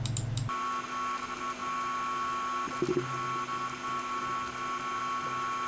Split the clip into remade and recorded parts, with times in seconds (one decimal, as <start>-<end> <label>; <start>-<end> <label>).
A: 0.0-5.7 recorded